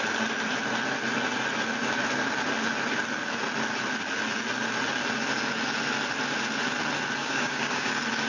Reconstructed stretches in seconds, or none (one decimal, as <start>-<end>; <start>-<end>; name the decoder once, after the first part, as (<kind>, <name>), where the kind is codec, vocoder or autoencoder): 7.2-7.9 (codec, DAC)